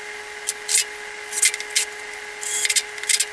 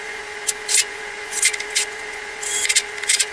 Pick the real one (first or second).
first